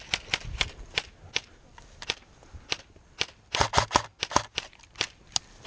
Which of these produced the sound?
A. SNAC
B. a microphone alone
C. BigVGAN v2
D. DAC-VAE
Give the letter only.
B